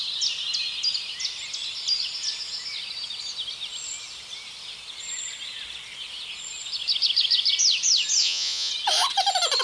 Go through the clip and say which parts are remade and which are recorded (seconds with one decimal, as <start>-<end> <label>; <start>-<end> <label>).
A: 0.0-8.2 recorded; 8.2-8.7 remade; 8.7-9.6 recorded